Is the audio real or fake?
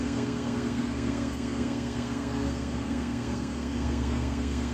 fake